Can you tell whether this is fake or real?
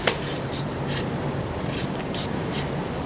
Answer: fake